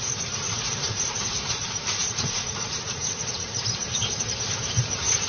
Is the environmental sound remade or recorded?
remade